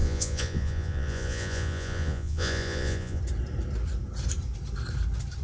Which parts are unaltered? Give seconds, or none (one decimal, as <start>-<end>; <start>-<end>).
3.2-5.4